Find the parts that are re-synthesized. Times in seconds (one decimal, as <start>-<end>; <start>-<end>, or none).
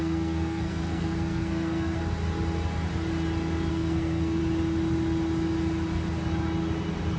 0.0-2.0; 3.7-4.4